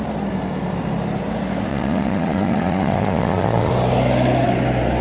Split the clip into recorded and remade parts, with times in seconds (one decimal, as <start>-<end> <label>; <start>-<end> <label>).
0.0-1.7 recorded; 1.7-3.7 remade; 3.7-5.0 recorded